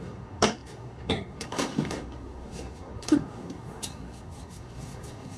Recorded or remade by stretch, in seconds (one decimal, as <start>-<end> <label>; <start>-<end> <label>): 0.0-5.4 remade